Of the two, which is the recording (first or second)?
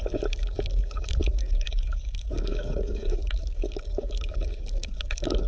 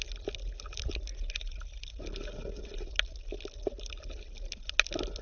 second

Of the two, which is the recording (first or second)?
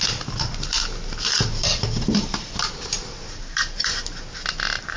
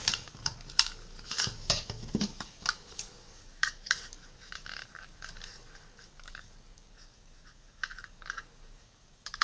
first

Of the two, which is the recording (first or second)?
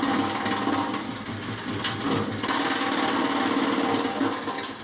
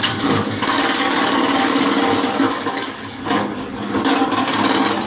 first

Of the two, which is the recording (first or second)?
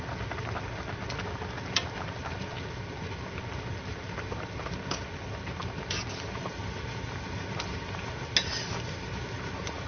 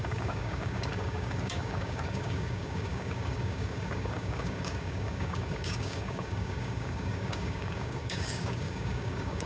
first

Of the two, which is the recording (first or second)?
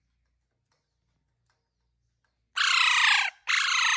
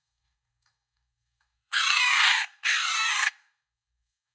first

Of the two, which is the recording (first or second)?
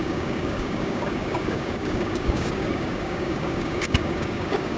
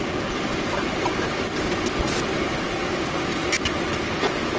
second